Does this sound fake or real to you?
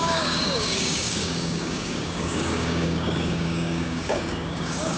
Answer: fake